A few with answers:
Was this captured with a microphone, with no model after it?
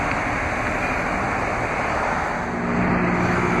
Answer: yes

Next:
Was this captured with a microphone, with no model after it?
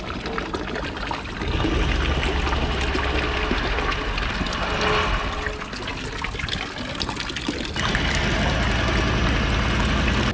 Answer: yes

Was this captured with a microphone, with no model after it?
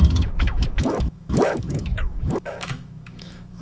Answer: no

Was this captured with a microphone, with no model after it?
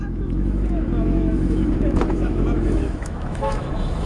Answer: no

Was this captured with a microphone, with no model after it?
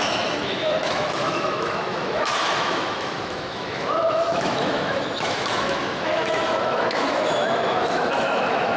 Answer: no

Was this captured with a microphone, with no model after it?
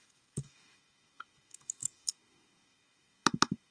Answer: no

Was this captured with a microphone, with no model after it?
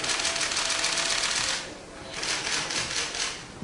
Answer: yes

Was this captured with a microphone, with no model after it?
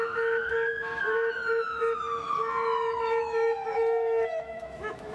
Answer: no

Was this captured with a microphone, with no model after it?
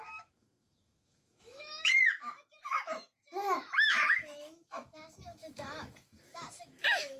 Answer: no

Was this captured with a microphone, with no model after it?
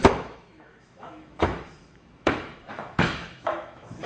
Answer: no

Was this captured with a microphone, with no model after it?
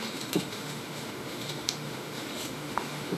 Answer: no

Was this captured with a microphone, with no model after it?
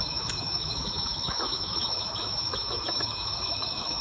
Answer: no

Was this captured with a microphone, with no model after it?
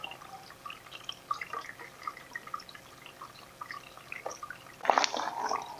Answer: yes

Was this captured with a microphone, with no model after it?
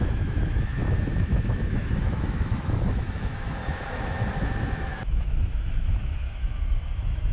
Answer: no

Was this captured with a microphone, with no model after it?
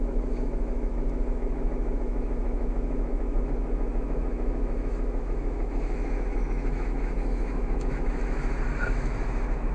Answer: no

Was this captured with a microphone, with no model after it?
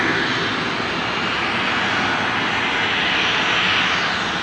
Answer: yes